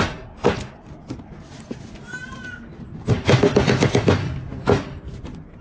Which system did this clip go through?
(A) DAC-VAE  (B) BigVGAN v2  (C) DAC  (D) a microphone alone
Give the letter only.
D